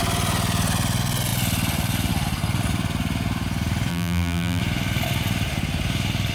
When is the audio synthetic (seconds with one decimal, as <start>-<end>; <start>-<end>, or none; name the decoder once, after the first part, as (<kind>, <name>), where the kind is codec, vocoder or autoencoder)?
3.9-4.6 (vocoder, BigVGAN v2)